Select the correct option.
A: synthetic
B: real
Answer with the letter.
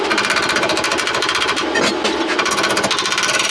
B